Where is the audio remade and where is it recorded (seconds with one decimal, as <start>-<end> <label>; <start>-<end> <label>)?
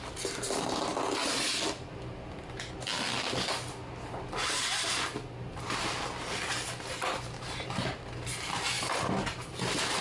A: 0.0-10.0 recorded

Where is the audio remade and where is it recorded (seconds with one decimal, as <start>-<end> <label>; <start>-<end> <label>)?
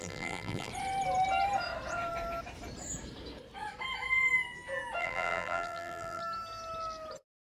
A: 0.0-0.7 remade; 0.7-5.0 recorded; 5.0-6.2 remade; 6.2-7.5 recorded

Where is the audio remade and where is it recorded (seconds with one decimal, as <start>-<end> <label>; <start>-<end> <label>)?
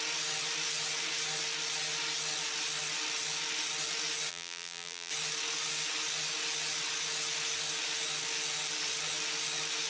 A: 0.0-4.3 recorded; 4.3-5.1 remade; 5.1-9.9 recorded